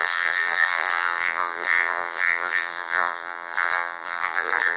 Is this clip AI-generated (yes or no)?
yes